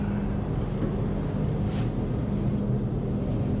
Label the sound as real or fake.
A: real